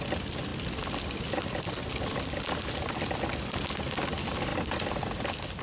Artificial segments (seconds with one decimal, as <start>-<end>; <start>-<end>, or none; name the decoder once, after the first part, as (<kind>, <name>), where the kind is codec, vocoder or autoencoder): 4.5-5.6 (vocoder, BigVGAN v2)